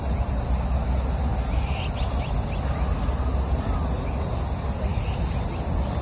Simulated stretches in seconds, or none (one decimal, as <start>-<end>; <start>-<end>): none